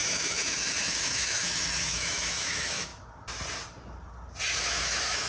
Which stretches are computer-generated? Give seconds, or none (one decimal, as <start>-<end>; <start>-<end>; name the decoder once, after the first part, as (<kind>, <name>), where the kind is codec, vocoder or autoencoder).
0.0-2.9 (autoencoder, DAC-VAE); 4.6-5.3

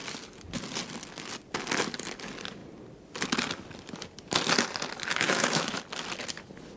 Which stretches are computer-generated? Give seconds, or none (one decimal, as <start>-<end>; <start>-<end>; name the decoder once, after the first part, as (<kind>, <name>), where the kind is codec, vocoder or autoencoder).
5.1-5.8 (autoencoder, DAC-VAE)

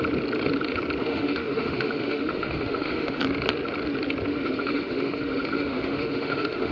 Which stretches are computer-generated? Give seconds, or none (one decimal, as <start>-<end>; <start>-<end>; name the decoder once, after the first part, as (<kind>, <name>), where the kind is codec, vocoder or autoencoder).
1.0-3.2 (autoencoder, DAC-VAE); 4.3-6.7

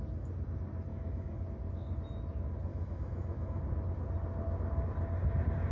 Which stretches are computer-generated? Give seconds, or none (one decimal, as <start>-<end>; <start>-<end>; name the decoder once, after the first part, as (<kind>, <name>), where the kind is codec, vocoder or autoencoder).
0.9-1.4 (autoencoder, DAC-VAE); 2.7-3.6

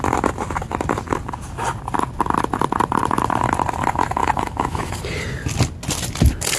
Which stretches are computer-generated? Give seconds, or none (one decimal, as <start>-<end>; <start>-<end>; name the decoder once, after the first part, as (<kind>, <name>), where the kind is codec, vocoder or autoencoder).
4.2-4.9 (autoencoder, DAC-VAE)

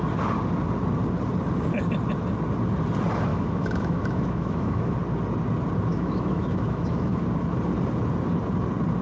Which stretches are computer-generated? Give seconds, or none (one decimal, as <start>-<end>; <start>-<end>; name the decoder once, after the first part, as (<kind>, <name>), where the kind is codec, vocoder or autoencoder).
3.3-4.9 (autoencoder, DAC-VAE); 5.9-7.2

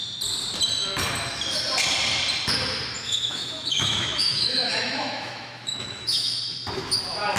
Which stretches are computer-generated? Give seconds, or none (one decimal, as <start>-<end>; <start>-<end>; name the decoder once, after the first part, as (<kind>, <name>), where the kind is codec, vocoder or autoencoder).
3.0-6.4 (autoencoder, DAC-VAE)

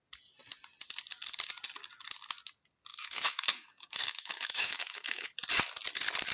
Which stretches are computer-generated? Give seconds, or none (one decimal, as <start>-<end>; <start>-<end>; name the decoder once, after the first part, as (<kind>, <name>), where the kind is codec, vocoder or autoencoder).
2.9-5.3 (autoencoder, DAC-VAE)